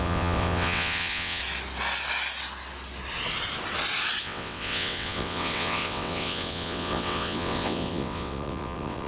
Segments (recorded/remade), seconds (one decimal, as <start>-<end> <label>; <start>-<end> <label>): 0.0-1.4 remade; 1.4-4.2 recorded; 4.2-9.1 remade